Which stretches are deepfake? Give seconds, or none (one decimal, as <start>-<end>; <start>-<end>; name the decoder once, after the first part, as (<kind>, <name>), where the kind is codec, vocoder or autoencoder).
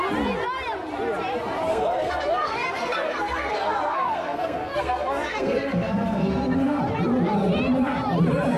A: 1.7-6.8 (codec, SNAC)